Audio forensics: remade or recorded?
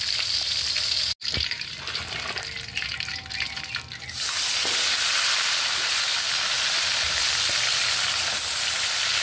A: recorded